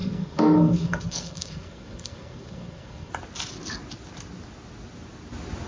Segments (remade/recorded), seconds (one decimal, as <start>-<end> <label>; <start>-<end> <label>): 0.0-3.1 remade; 3.1-5.7 recorded